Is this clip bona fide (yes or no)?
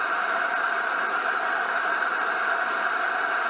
yes